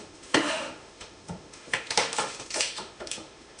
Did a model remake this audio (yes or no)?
yes